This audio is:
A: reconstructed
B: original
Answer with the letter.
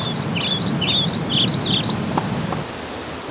B